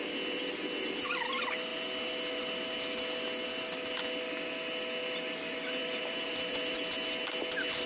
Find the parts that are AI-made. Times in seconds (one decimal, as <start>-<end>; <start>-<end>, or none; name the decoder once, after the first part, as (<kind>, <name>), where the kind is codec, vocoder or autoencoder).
5.8-6.7 (vocoder, BigVGAN v2)